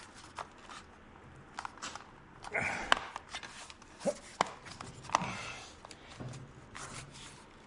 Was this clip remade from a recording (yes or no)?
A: no